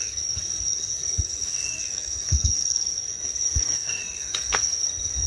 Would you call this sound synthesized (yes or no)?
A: yes